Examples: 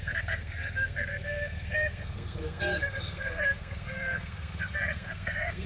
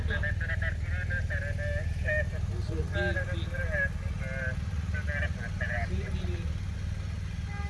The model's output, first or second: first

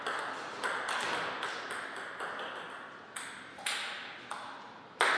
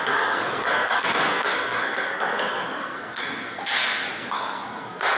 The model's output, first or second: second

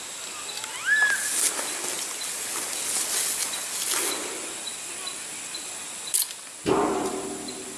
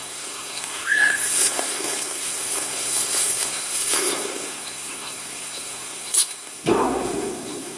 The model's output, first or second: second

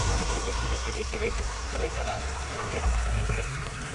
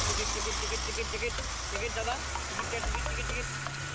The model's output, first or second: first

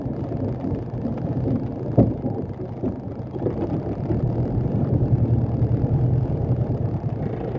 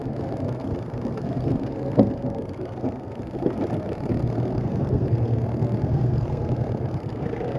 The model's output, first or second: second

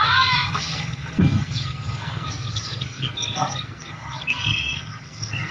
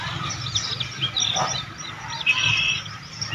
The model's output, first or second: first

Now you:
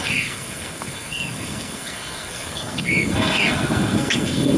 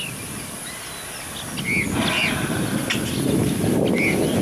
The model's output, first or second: first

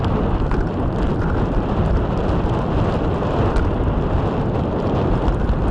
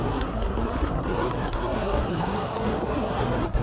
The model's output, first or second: second